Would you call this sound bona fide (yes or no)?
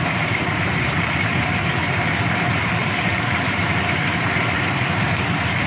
no